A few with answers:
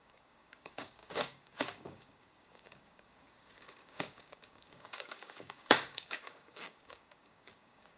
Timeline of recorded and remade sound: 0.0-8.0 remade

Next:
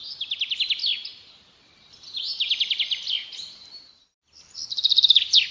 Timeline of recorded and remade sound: 0.0-5.5 recorded

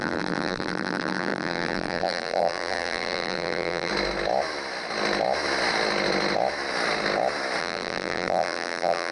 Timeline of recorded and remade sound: 0.0-3.9 remade; 3.9-7.6 recorded; 7.6-9.1 remade

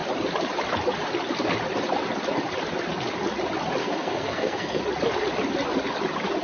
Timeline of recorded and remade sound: 0.0-3.8 recorded; 3.8-4.8 remade; 4.8-6.4 recorded